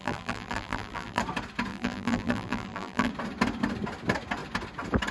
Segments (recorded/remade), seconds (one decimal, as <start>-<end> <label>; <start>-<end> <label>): 0.0-1.2 remade; 1.2-1.7 recorded; 1.7-3.1 remade; 3.1-5.1 recorded